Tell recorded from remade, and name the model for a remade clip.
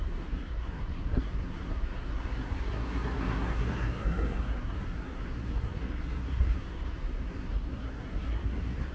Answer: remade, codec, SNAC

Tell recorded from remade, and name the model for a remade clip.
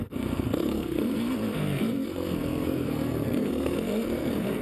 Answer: remade, codec, SNAC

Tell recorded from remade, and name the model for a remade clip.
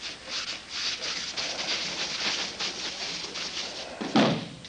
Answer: recorded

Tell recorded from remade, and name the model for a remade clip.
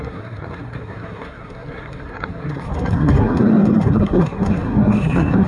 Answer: remade, codec, SNAC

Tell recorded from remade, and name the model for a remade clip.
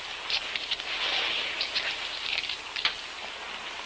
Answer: recorded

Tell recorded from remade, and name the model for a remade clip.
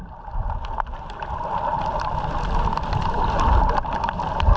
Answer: recorded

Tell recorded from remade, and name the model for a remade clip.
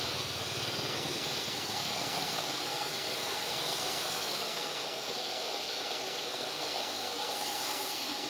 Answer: remade, codec, SNAC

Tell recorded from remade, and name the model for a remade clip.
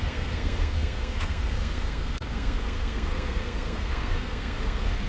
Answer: remade, codec, SNAC